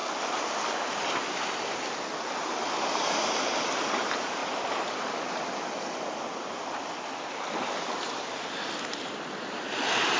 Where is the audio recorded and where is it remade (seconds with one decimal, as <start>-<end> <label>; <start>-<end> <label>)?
0.0-10.2 recorded